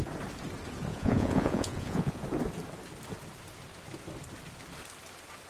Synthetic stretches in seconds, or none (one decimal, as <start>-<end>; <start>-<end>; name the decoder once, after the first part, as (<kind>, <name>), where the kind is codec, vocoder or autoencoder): 0.9-2.2 (vocoder, Vocos)